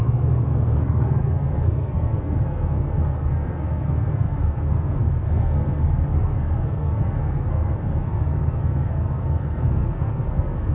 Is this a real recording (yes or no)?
no